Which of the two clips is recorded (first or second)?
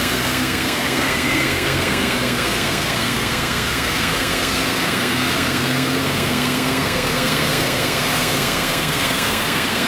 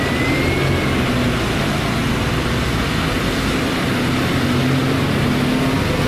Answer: second